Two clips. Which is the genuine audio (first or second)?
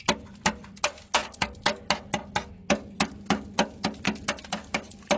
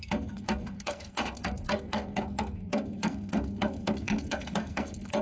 first